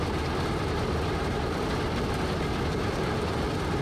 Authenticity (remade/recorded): recorded